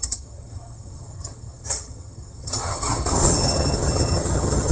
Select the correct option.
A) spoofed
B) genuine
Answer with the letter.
A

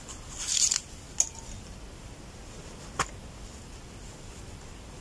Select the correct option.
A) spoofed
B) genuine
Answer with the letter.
B